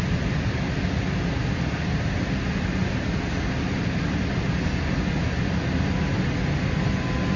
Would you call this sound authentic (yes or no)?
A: yes